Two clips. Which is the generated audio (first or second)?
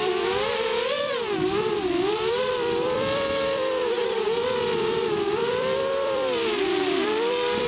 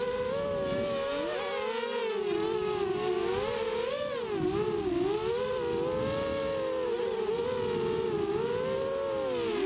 first